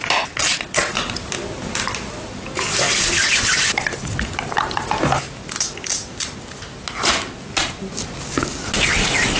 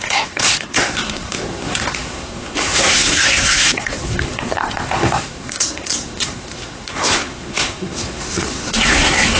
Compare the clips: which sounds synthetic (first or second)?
second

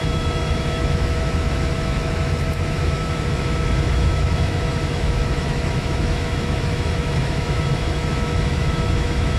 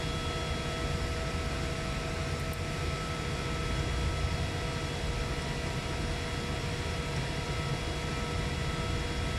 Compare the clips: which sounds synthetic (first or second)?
first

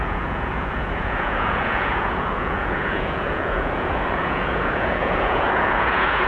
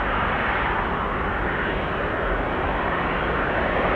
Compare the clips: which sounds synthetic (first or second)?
first